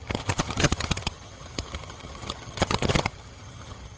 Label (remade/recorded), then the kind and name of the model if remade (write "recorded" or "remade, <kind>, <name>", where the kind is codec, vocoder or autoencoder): remade, vocoder, HiFi-GAN